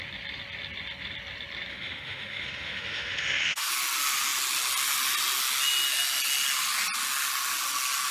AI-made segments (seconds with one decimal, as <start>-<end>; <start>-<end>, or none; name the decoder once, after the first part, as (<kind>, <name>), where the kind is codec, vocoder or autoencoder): 1.7-3.7 (autoencoder, DAC-VAE)